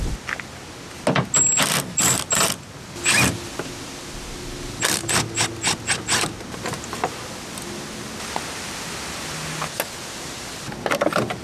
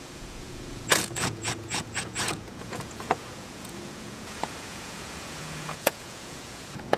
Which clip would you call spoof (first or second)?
second